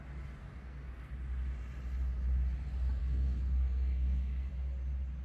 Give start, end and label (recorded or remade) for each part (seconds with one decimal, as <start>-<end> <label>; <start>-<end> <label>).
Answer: 0.0-0.4 recorded; 0.4-1.1 remade; 1.1-3.0 recorded; 3.0-4.5 remade; 4.5-5.2 recorded